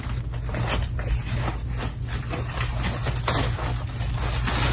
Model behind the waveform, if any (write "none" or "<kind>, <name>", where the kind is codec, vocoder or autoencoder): none